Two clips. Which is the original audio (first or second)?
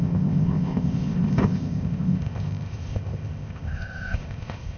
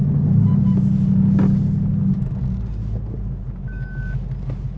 second